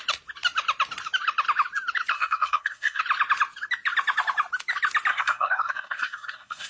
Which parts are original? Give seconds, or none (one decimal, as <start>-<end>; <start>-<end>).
0.0-2.1; 3.0-5.1